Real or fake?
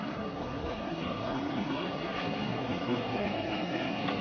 fake